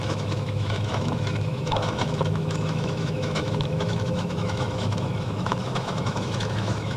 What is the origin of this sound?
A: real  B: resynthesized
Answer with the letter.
B